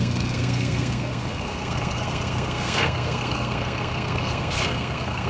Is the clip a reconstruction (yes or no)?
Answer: yes